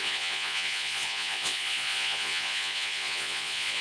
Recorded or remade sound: remade